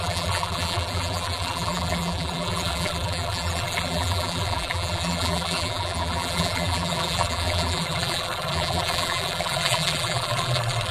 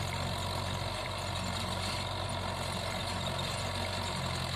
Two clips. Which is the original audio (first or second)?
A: second